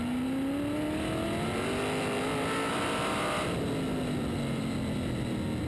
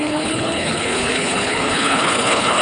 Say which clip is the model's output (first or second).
second